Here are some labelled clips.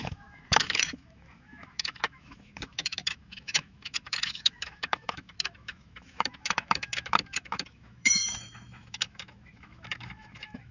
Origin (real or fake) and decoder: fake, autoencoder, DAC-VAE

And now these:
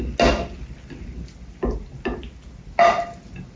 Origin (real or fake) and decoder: real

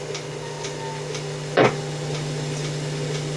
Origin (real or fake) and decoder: real